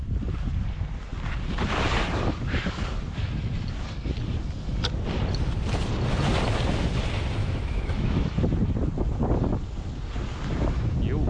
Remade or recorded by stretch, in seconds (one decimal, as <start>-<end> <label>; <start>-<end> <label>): 0.0-7.4 recorded; 7.4-8.4 remade; 8.4-11.3 recorded